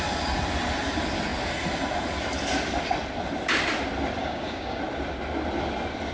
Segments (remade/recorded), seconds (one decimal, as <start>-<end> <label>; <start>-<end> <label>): 0.0-4.2 recorded; 4.2-4.8 remade; 4.8-6.1 recorded